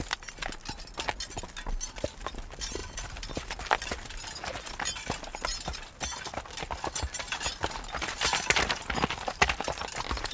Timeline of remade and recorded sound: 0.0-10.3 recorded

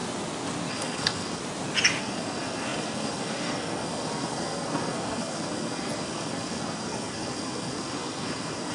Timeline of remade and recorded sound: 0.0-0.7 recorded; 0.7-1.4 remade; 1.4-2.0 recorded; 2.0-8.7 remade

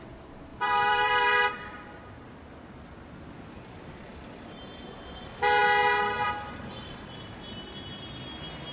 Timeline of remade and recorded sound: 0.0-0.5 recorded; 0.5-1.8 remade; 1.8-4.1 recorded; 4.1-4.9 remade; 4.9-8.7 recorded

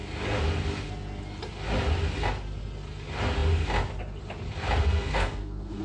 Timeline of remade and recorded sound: 0.0-4.8 recorded; 4.8-5.8 remade

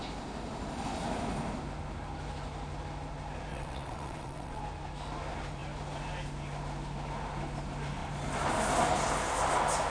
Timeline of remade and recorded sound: 0.0-3.5 recorded; 3.5-4.6 remade; 4.6-9.9 recorded

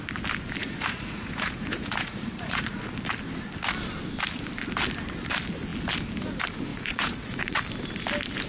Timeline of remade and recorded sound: 0.0-0.6 recorded; 0.6-2.9 remade; 2.9-6.7 recorded; 6.7-7.6 remade; 7.6-8.5 recorded